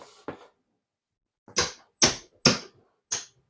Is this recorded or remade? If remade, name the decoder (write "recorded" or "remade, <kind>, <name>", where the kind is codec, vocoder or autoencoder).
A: recorded